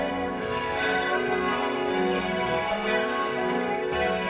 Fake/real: fake